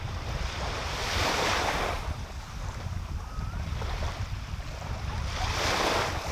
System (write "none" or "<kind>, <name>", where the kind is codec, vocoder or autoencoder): vocoder, BigVGAN v2